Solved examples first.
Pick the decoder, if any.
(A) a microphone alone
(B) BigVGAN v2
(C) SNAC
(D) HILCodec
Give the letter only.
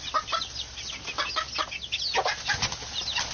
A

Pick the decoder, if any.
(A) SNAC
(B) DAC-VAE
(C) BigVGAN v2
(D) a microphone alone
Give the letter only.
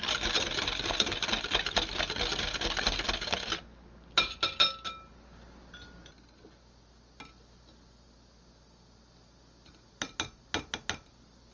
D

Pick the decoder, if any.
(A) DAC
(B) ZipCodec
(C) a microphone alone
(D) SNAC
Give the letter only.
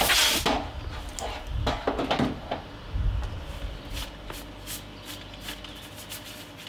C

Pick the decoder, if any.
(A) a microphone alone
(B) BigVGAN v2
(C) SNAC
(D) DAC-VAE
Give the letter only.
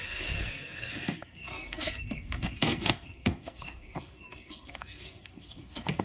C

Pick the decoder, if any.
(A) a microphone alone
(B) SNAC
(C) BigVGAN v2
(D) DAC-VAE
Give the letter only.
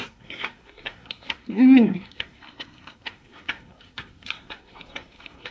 B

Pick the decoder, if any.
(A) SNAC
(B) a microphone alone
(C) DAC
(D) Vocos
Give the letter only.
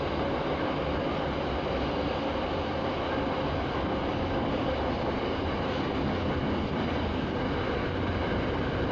B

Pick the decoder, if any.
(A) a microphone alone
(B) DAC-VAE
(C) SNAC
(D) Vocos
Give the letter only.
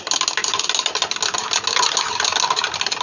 A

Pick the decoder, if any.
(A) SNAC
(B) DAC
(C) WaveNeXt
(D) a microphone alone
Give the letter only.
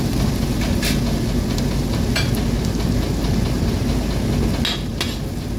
D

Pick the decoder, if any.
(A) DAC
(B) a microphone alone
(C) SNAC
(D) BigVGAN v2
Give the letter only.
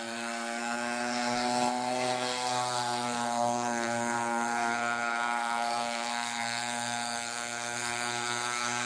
C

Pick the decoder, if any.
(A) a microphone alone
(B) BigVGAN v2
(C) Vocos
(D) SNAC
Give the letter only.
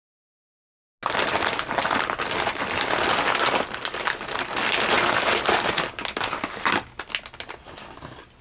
A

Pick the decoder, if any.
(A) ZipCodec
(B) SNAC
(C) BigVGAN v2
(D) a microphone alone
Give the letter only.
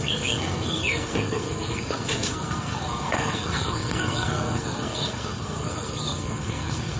B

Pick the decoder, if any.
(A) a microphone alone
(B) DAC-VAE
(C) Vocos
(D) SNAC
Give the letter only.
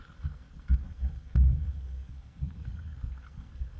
D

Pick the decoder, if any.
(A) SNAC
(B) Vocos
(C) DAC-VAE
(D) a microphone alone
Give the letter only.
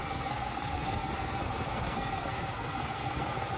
A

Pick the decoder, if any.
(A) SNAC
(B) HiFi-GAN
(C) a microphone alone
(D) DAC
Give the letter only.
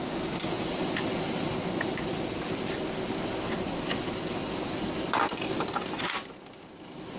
C